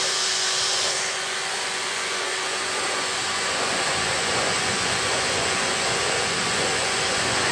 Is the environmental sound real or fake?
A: fake